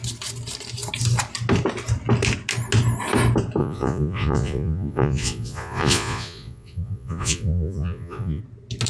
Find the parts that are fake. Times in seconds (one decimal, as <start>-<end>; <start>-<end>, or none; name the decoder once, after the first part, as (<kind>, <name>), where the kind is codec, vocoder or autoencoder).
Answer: 3.6-8.4 (vocoder, Vocos)